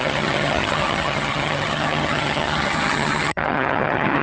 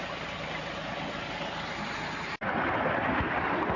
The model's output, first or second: first